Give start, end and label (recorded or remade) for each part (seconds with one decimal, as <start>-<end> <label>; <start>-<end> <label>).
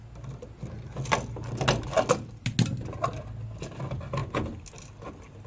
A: 0.0-5.5 recorded